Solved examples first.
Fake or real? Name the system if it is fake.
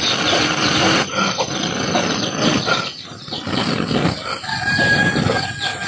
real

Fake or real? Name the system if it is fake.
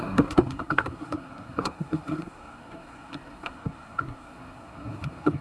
fake, codec, SNAC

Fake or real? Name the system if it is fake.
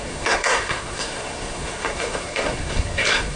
fake, codec, SNAC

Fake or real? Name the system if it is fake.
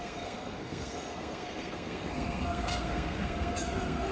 fake, codec, SNAC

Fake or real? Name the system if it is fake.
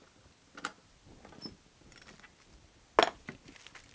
real